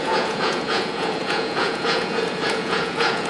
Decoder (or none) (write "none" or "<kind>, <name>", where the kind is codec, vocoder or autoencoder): vocoder, Vocos